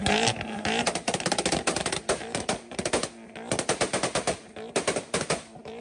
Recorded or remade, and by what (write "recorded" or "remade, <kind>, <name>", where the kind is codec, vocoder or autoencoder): recorded